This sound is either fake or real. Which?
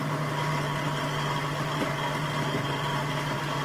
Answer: real